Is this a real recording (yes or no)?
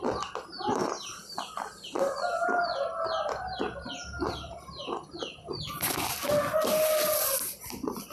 yes